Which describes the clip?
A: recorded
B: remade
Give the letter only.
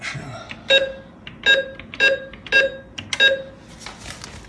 A